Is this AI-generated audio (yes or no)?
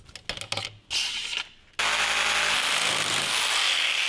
no